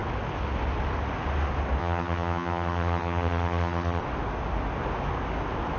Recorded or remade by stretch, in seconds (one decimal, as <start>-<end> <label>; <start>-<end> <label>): 0.0-1.8 recorded; 1.8-4.0 remade; 4.0-5.8 recorded

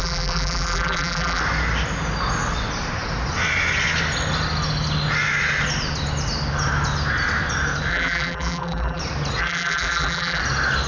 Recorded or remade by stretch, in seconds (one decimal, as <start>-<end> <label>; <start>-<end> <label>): 0.0-1.4 remade; 1.4-7.9 recorded; 7.9-9.0 remade; 9.0-9.4 recorded; 9.4-10.4 remade; 10.4-10.9 recorded